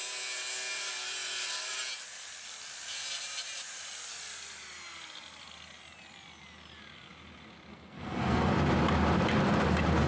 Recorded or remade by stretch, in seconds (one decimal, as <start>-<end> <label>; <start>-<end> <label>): 0.0-7.7 recorded; 7.7-8.5 remade; 8.5-10.1 recorded